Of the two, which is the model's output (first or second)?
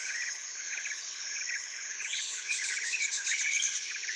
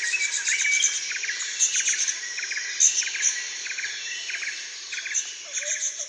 first